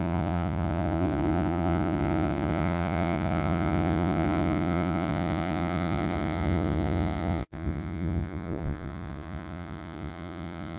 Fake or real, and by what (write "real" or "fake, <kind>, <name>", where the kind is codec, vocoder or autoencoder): fake, vocoder, Vocos